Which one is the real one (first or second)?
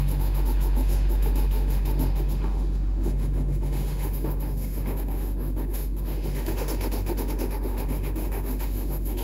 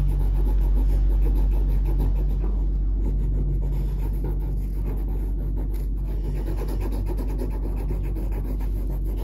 second